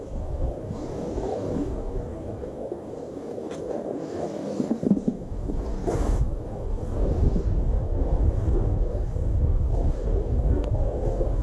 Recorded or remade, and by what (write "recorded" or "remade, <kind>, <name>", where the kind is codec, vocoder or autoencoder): remade, codec, DAC